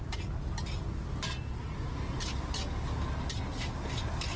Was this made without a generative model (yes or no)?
yes